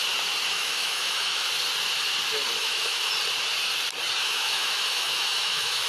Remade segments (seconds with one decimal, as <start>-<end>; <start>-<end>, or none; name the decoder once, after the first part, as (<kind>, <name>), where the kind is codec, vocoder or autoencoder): 0.5-1.5 (autoencoder, DAC-VAE); 2.6-3.1; 4.2-5.9